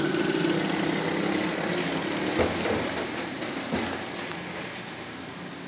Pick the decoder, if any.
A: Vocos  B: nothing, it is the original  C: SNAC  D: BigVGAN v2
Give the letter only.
B